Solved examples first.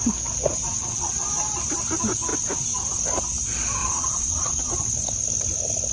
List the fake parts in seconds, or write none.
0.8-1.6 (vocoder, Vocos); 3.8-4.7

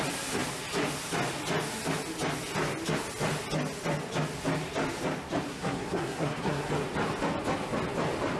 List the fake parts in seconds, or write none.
5.5-6.7 (codec, SNAC)

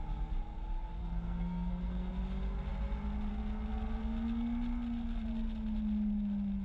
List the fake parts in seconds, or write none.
1.0-2.1 (codec, SNAC)

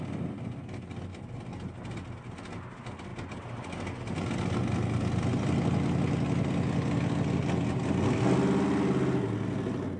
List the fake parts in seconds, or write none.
none

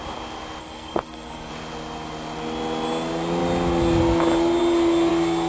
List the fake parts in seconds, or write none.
0.6-1.5 (codec, SNAC)